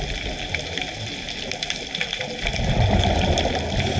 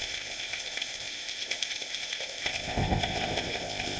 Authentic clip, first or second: first